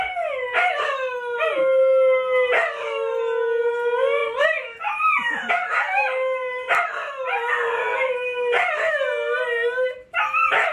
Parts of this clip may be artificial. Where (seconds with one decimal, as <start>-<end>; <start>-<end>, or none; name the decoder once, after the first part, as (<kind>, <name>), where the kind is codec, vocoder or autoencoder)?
none